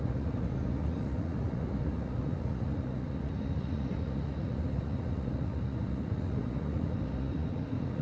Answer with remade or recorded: remade